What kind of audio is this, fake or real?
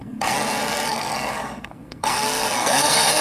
fake